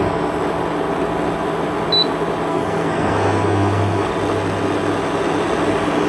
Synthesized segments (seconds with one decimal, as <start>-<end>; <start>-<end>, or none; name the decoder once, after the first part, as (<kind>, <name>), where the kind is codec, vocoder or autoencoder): 2.5-4.1 (codec, SNAC)